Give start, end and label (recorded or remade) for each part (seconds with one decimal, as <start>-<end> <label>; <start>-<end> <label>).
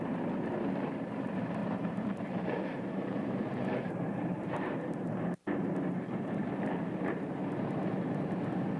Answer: 0.0-1.6 recorded; 1.6-6.5 remade; 6.5-8.8 recorded